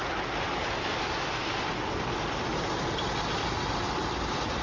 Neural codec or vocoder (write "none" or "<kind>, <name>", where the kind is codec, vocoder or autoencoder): none